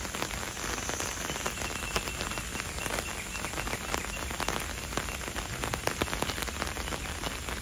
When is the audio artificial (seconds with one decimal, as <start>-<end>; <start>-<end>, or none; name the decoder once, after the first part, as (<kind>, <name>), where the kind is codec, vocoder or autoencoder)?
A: none